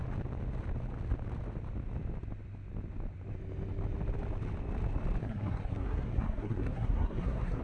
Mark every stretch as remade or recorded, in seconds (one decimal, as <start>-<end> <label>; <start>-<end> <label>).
0.0-5.2 recorded; 5.2-7.6 remade